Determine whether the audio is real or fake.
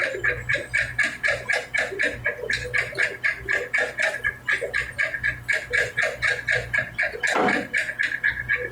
real